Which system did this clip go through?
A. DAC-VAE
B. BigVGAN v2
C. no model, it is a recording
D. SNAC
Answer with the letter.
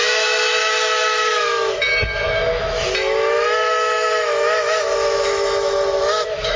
A